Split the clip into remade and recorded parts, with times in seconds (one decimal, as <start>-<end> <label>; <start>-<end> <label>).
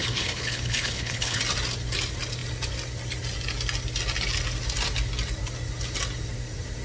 0.0-1.4 remade; 1.4-6.8 recorded